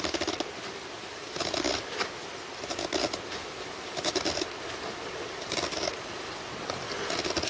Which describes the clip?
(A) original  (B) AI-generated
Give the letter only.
A